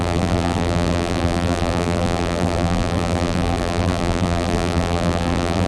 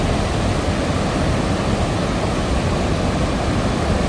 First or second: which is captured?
second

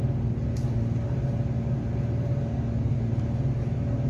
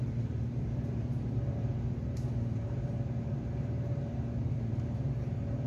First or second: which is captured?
first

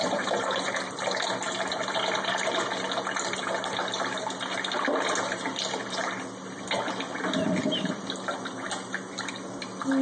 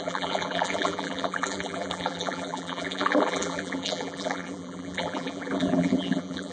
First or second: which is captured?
first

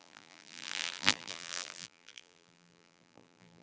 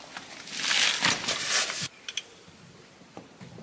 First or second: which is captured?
second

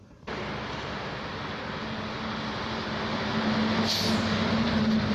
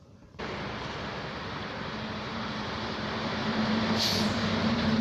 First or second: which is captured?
first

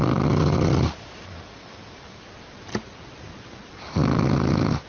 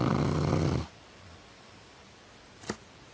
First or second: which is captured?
second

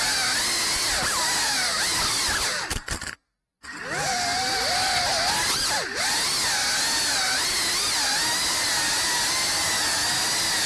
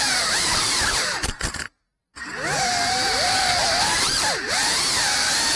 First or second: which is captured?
first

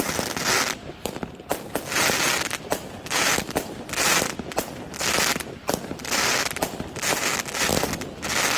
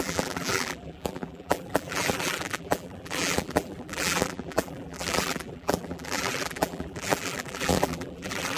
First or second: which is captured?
first